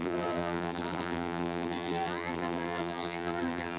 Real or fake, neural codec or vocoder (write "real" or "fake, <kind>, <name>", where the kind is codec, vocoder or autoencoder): fake, vocoder, BigVGAN v2